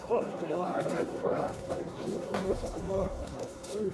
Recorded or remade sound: remade